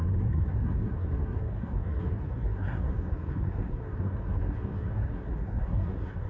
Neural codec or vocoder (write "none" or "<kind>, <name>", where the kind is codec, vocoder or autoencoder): codec, SNAC